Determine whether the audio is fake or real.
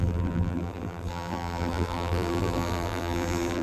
fake